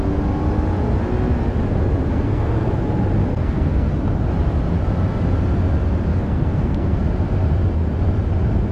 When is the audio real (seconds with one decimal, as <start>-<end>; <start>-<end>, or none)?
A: 0.0-2.1; 2.7-3.3; 3.9-6.1; 7.0-8.7